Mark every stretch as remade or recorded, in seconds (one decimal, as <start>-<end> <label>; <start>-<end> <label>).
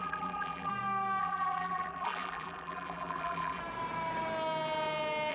0.0-0.7 remade; 0.7-1.2 recorded; 1.2-3.6 remade; 3.6-5.3 recorded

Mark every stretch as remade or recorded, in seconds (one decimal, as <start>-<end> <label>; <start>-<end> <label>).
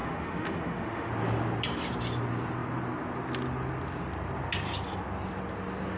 0.0-1.1 remade; 1.1-6.0 recorded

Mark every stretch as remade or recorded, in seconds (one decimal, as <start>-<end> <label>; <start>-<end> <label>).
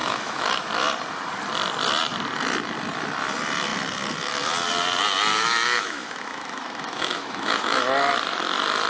0.0-0.7 remade; 0.7-5.3 recorded; 5.3-7.8 remade; 7.8-8.9 recorded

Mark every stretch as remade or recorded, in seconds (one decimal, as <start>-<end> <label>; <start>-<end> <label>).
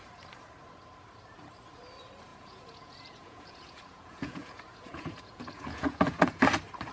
0.0-2.3 recorded; 2.3-6.4 remade; 6.4-6.9 recorded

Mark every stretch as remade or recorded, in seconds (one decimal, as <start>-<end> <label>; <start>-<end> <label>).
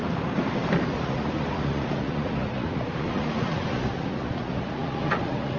0.0-0.9 recorded; 0.9-5.6 remade